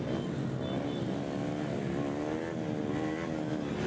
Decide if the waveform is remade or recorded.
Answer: recorded